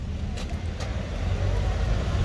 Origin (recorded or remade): recorded